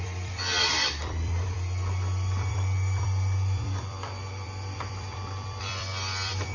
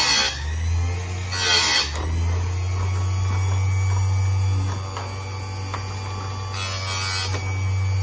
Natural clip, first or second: second